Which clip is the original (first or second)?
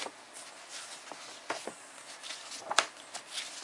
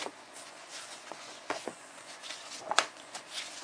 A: first